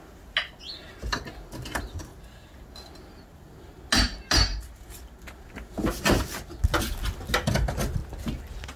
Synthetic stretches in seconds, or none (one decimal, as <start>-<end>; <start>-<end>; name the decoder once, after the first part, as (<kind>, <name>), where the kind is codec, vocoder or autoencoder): none